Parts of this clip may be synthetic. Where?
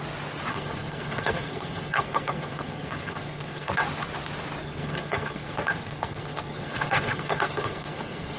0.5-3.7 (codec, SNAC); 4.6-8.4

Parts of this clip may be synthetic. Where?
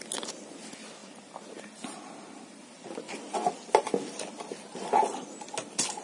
none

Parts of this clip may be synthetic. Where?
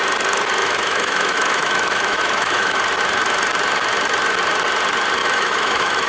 0.6-2.8 (autoencoder, DAC-VAE); 5.2-6.1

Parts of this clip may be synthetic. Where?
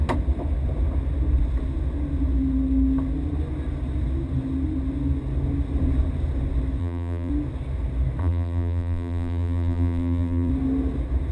6.8-7.3 (vocoder, BigVGAN v2); 8.2-10.5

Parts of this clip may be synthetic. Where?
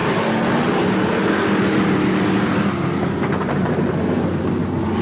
none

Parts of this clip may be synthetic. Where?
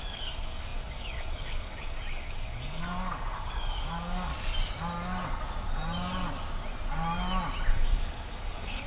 0.0-4.3 (codec, DAC); 7.7-8.9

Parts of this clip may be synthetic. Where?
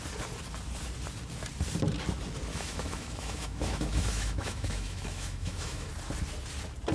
2.5-5.9 (autoencoder, DAC-VAE)